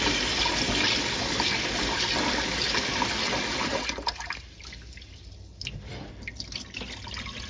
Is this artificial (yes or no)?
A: no